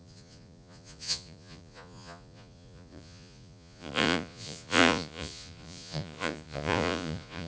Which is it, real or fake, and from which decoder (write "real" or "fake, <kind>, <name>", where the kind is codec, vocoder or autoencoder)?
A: fake, vocoder, Vocos